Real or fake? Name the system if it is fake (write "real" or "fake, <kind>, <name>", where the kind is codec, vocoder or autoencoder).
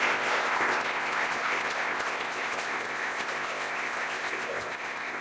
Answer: fake, codec, ZipCodec